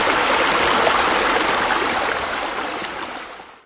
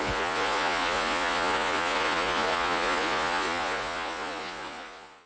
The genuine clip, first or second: first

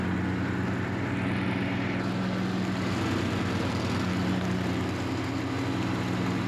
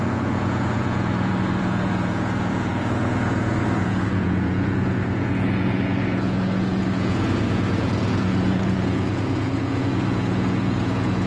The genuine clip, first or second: first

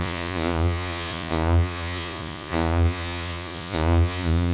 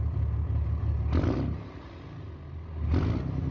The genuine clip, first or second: second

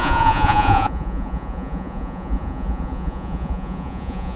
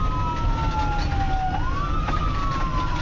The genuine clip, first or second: second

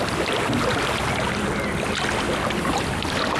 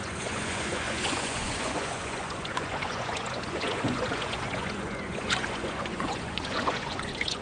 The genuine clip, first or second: first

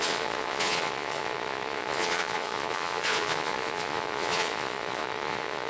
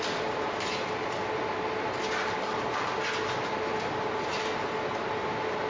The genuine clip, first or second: second